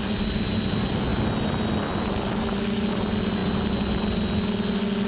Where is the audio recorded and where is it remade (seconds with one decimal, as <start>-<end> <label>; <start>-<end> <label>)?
0.0-5.1 recorded